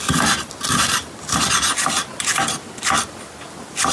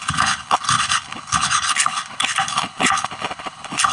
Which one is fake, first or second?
second